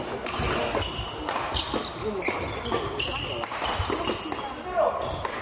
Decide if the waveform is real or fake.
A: real